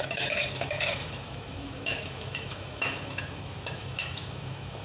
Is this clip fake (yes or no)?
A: yes